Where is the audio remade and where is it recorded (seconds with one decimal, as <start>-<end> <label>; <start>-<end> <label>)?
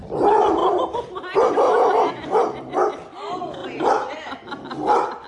0.0-5.3 recorded